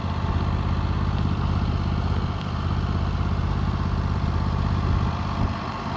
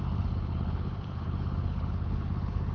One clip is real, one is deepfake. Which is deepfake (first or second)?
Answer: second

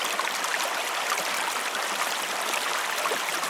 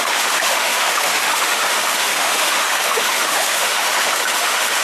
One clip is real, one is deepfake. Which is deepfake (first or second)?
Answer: second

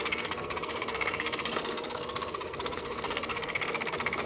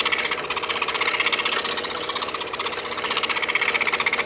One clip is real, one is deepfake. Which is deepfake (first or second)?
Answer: first